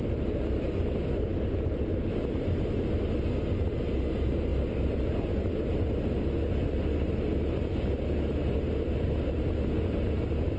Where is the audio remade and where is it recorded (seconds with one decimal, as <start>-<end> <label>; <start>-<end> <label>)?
0.0-10.6 recorded